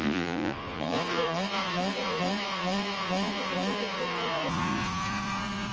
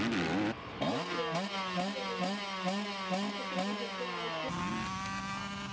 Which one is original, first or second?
second